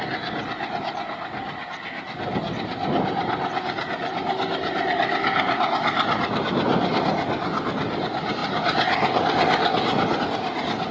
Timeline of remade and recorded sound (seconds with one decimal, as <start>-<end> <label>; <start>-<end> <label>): 0.0-10.9 recorded